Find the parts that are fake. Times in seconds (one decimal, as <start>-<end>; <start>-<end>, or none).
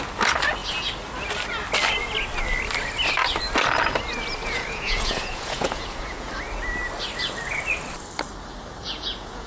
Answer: 4.4-6.3; 8.8-9.5